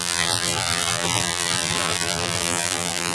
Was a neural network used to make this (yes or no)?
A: yes